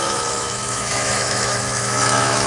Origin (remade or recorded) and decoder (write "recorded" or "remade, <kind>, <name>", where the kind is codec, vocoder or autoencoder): remade, autoencoder, DAC-VAE